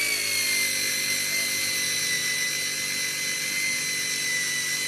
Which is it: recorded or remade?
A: recorded